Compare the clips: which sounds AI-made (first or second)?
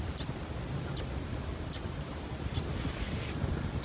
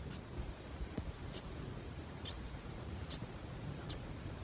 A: second